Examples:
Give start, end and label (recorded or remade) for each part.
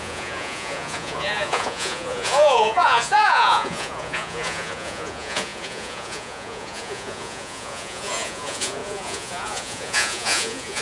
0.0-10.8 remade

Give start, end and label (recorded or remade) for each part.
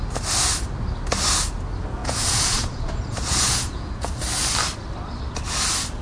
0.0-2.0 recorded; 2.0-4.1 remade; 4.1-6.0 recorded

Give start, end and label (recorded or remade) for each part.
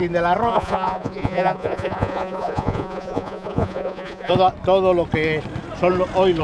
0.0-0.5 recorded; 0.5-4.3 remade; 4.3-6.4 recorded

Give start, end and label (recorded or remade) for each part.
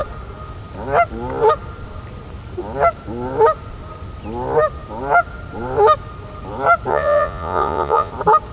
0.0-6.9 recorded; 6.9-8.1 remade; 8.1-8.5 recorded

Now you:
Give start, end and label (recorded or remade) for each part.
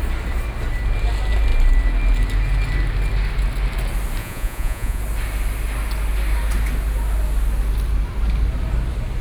0.0-4.2 recorded; 4.2-5.0 remade; 5.0-9.2 recorded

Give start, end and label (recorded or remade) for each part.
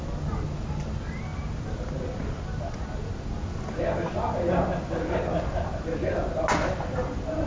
0.0-7.5 recorded